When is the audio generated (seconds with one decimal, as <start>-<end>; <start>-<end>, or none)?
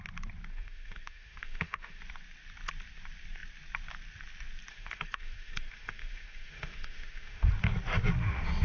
0.5-2.0; 4.7-7.5